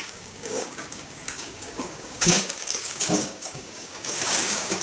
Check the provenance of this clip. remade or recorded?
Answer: remade